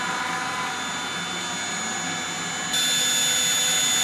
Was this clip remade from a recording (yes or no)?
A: no